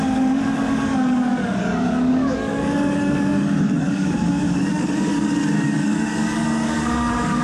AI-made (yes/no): yes